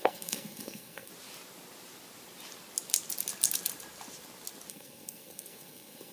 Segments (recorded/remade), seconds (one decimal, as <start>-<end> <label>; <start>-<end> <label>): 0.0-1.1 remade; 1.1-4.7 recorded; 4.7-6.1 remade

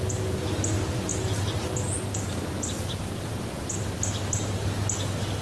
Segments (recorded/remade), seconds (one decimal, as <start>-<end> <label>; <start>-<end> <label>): 0.0-5.4 recorded

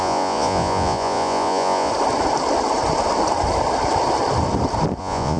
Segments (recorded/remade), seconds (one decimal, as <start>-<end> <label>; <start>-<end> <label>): 0.0-1.9 remade; 1.9-5.0 recorded; 5.0-5.4 remade

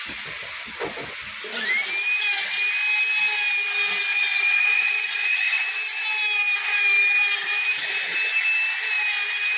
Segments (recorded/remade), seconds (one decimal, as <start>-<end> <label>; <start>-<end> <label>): 0.0-4.1 recorded; 4.1-5.6 remade; 5.6-9.6 recorded